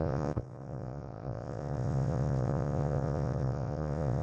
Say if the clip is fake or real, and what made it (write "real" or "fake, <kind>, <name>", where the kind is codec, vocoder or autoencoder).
fake, vocoder, Vocos